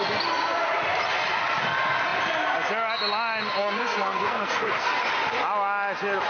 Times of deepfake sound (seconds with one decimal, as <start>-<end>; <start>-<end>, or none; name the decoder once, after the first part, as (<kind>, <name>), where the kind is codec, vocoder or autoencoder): 3.6-5.0 (codec, SNAC)